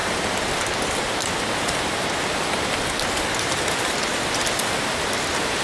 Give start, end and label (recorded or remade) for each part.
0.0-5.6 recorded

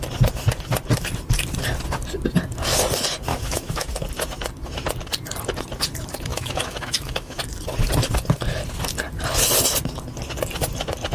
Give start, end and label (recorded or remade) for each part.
0.0-3.3 recorded; 3.3-3.9 remade; 3.9-6.3 recorded; 6.3-7.4 remade; 7.4-11.1 recorded

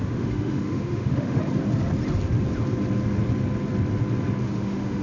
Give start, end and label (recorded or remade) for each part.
0.0-1.4 remade; 1.4-4.4 recorded; 4.4-5.0 remade

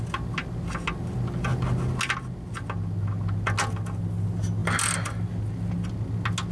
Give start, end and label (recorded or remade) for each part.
0.0-6.5 recorded